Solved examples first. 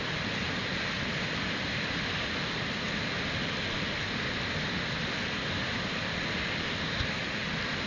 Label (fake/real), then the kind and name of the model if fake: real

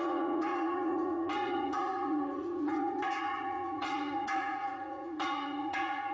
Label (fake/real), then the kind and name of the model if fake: fake, vocoder, Vocos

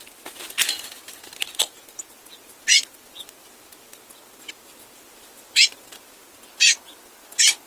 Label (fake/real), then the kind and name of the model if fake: real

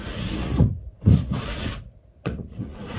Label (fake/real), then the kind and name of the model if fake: fake, vocoder, Vocos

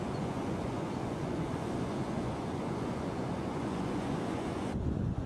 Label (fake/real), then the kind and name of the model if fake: fake, vocoder, Vocos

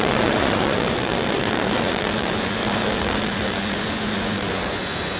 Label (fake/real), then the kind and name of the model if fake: fake, vocoder, Vocos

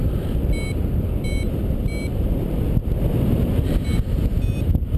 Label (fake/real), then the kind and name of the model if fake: real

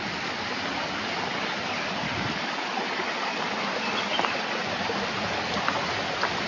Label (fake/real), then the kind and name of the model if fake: real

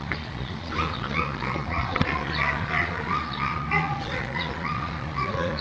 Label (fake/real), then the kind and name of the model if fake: fake, vocoder, Vocos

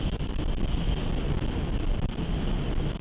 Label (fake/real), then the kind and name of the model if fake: real